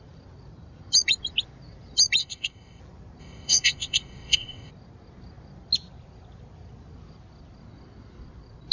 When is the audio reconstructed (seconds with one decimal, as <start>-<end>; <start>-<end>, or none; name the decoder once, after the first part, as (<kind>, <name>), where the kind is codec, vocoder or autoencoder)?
2.2-2.8 (codec, ZipCodec); 3.2-4.7